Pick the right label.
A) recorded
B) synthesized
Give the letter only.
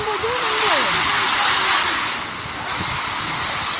A